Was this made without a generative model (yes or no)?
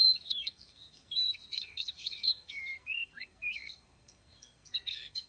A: no